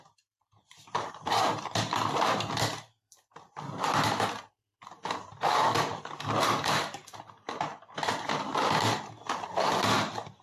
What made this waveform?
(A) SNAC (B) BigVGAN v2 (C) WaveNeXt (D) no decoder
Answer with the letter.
D